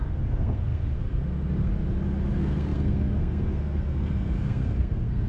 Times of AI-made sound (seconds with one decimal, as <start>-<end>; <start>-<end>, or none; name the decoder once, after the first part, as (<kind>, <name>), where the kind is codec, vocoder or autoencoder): 0.0-1.7 (codec, SNAC); 2.3-5.3